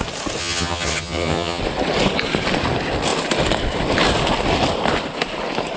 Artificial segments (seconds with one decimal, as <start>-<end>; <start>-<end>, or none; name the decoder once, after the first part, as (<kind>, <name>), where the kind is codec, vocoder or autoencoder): 0.4-1.6 (vocoder, HiFi-GAN)